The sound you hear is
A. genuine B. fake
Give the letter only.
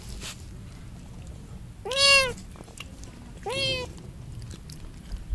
A